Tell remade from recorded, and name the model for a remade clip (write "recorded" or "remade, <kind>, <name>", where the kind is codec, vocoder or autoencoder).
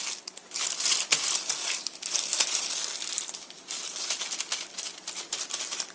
recorded